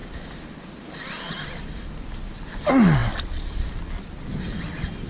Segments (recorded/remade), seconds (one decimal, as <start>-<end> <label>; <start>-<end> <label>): 0.0-5.1 recorded